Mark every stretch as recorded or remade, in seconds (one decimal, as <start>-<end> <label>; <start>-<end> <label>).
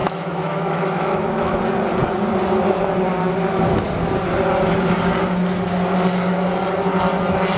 0.0-1.6 remade; 1.6-7.6 recorded